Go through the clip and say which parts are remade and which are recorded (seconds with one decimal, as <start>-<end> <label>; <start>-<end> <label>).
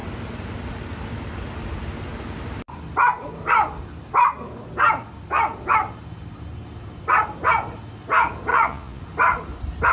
0.0-8.5 recorded; 8.5-9.0 remade; 9.0-9.9 recorded